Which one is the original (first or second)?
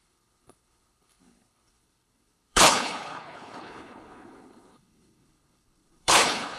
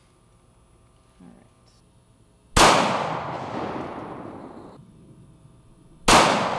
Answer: second